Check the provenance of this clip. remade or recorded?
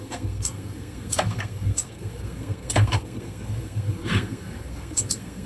remade